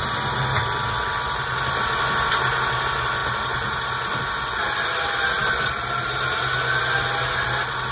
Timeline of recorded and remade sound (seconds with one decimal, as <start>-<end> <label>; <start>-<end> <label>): 0.0-3.2 recorded; 3.2-3.9 remade; 3.9-7.9 recorded